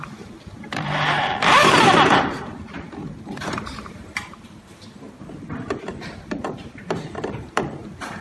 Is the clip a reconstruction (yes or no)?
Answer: yes